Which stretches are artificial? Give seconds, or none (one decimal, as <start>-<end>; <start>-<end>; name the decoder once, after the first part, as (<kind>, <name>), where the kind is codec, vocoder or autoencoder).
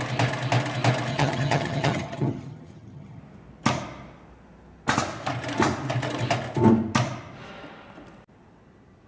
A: 1.1-3.2 (vocoder, HiFi-GAN)